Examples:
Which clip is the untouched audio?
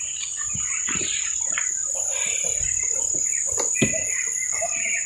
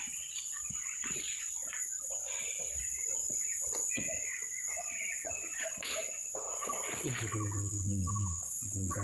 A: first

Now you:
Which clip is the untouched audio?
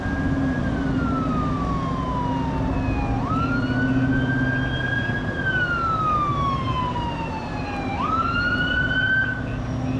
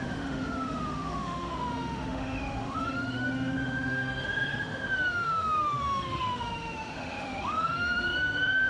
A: first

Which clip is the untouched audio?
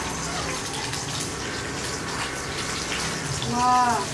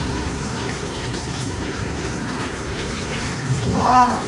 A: first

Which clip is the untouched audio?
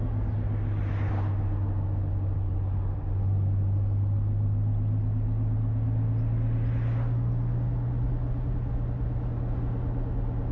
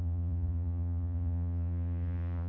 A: first